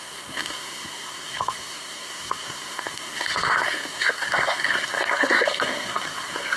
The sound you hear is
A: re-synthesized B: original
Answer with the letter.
A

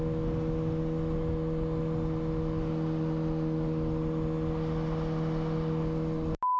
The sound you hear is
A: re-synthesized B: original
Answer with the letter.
B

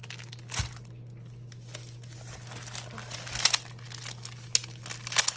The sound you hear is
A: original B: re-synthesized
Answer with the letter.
A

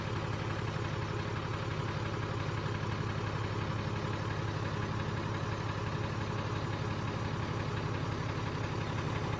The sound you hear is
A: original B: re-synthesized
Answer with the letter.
A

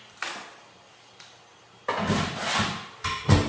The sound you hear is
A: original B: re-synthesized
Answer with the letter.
A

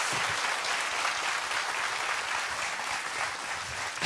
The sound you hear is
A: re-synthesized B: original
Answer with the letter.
B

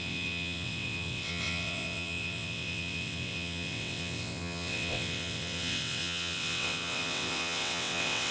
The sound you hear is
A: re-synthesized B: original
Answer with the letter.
A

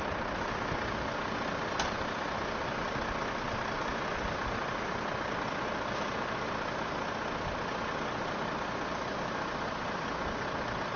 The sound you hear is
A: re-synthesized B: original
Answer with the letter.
B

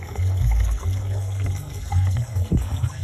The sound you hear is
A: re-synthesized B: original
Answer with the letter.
A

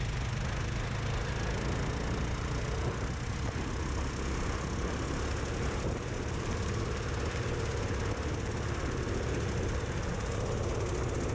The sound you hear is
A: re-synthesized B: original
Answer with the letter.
B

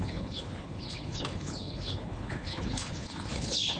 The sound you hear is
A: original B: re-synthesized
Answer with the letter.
B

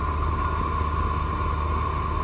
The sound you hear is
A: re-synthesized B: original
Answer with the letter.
B